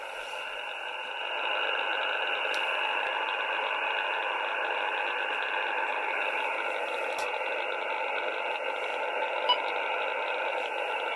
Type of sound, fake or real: real